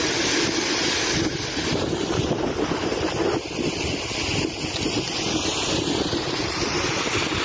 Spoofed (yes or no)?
no